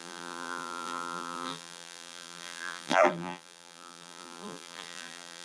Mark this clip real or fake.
fake